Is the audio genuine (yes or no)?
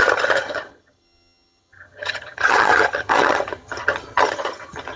no